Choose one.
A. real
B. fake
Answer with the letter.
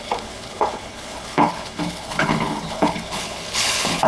B